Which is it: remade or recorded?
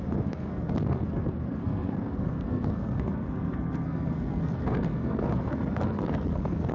remade